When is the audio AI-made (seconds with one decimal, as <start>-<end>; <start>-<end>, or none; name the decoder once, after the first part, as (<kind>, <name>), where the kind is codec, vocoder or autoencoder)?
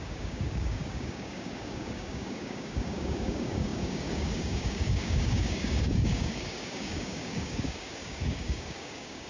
0.0-9.3 (codec, DAC)